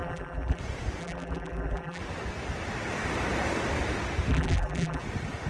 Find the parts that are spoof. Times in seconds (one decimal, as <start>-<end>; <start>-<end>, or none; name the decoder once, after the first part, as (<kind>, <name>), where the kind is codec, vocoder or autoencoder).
0.0-0.6 (vocoder, BigVGAN v2); 1.0-2.0; 4.3-5.0